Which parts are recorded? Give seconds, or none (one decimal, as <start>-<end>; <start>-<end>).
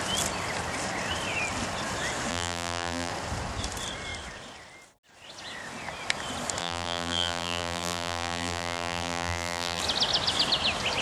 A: 0.0-2.3; 3.1-6.6; 9.8-11.0